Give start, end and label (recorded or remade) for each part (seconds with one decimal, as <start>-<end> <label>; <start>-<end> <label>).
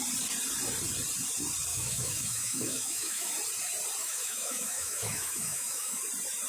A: 0.0-1.7 recorded; 1.7-3.3 remade; 3.3-4.0 recorded; 4.0-6.0 remade; 6.0-6.5 recorded